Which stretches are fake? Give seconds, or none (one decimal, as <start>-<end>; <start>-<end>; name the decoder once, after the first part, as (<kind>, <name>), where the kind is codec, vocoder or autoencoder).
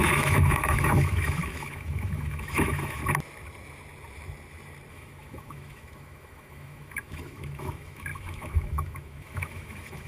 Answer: 0.0-3.0 (autoencoder, DAC-VAE); 4.9-10.1